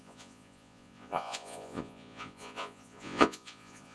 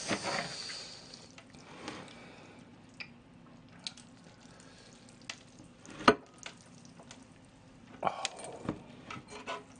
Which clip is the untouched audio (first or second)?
second